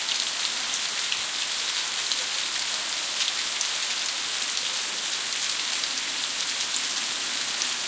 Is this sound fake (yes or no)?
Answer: no